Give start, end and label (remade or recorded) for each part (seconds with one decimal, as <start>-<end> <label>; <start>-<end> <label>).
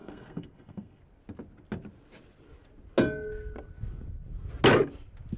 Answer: 0.0-1.0 remade; 1.0-5.4 recorded